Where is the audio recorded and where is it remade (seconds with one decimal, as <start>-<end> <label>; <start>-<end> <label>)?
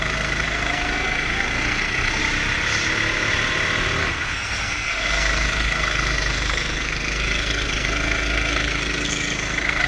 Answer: 0.0-2.2 remade; 2.2-4.0 recorded; 4.0-9.9 remade